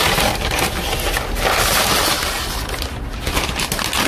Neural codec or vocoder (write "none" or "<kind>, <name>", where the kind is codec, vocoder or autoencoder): none